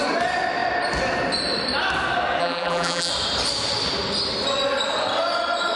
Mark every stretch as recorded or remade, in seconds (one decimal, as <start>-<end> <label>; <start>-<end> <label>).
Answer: 0.0-2.4 recorded; 2.4-3.1 remade; 3.1-5.8 recorded